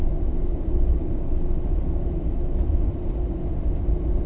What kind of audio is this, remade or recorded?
recorded